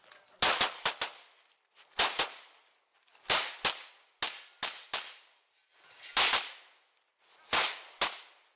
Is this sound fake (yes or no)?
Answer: no